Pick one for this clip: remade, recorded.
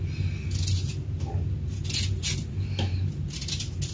recorded